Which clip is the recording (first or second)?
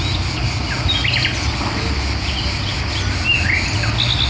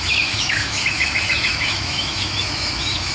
first